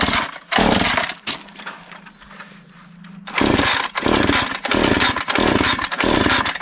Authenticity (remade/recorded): recorded